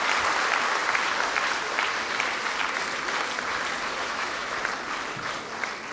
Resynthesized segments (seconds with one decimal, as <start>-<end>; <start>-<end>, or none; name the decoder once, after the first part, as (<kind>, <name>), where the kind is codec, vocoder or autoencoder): 4.0-4.5 (autoencoder, DAC-VAE)